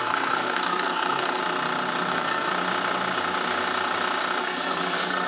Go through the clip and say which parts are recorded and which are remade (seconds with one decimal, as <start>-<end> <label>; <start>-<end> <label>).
0.0-1.4 remade; 1.4-2.1 recorded; 2.1-2.5 remade; 2.5-4.4 recorded; 4.4-5.3 remade